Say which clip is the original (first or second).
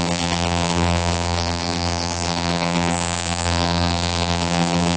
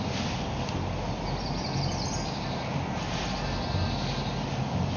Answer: second